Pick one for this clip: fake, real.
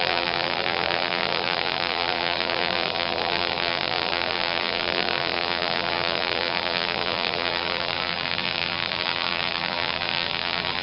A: fake